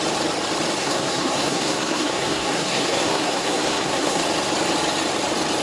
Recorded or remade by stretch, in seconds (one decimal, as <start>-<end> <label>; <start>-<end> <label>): 0.0-0.8 recorded; 0.8-4.2 remade; 4.2-5.6 recorded